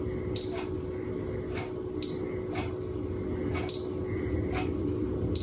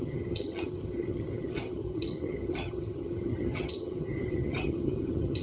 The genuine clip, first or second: first